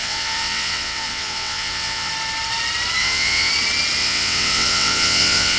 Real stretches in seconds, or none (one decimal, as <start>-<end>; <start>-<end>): 2.1-3.0; 3.5-4.0